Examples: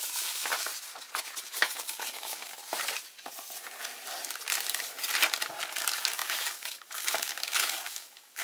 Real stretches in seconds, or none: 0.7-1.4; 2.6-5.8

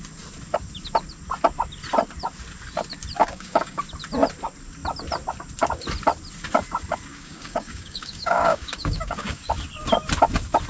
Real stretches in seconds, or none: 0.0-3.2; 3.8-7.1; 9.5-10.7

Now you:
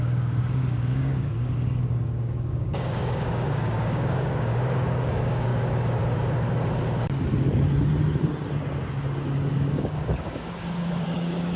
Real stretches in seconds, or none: 5.5-9.5

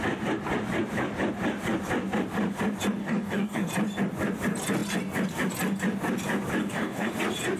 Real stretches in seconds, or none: 0.0-3.0; 3.7-6.6; 7.1-7.6